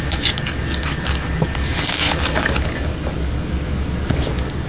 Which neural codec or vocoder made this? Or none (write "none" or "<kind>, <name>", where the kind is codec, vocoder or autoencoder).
codec, DAC